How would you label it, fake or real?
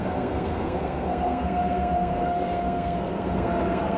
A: fake